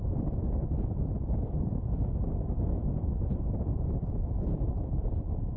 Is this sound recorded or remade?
remade